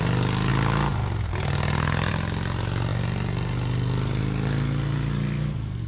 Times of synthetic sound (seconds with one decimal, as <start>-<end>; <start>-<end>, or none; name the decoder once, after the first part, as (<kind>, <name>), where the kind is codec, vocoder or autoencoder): none